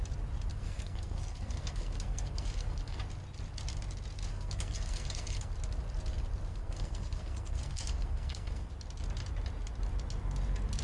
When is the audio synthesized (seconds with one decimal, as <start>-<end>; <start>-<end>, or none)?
0.5-3.0; 4.3-5.5; 6.5-8.7